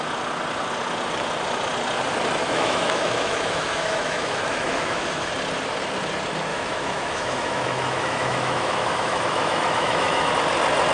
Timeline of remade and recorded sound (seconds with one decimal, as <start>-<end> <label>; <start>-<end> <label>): 0.0-2.4 recorded; 2.4-5.3 remade; 5.3-6.5 recorded; 6.5-10.3 remade; 10.3-10.9 recorded